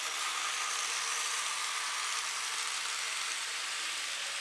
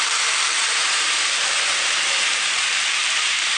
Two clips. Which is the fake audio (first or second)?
second